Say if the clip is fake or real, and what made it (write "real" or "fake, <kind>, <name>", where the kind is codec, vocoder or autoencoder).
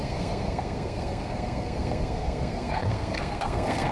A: fake, codec, SNAC